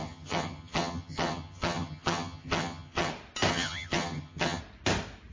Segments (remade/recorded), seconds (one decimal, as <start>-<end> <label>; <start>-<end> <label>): 0.0-3.1 remade; 3.1-3.5 recorded; 3.5-4.6 remade; 4.6-5.3 recorded